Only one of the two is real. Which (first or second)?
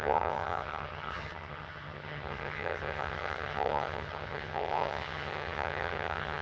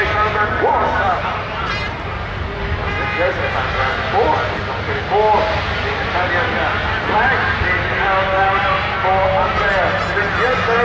second